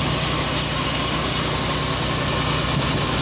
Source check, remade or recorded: recorded